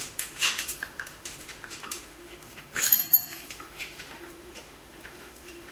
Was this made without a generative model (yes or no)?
no